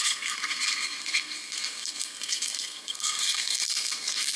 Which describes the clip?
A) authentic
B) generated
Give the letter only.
B